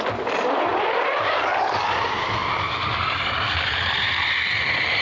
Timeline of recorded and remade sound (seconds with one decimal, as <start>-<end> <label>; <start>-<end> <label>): 0.0-5.0 recorded